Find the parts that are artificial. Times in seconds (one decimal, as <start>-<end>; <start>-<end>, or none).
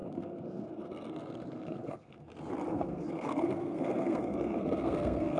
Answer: 0.0-2.3; 2.7-5.4